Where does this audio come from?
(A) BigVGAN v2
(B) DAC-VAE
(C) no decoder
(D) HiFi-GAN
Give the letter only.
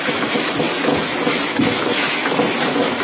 B